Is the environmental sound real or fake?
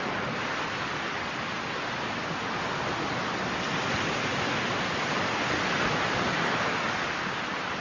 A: real